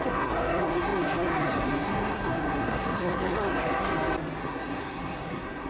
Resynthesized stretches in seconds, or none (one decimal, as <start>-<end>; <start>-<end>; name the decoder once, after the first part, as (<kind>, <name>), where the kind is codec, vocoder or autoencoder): 0.0-3.9 (codec, SNAC); 4.4-5.7